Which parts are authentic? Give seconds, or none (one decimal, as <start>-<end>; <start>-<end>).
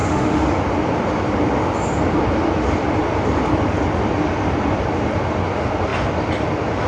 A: 0.6-6.9